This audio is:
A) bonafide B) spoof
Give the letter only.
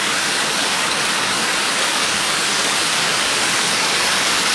B